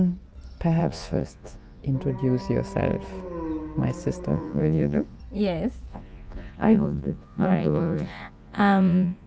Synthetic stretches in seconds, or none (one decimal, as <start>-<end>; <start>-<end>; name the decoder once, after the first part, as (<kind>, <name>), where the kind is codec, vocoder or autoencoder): 0.8-1.8 (vocoder, Vocos); 4.3-5.2; 5.9-9.3